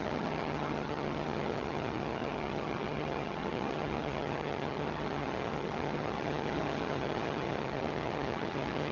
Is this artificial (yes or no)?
yes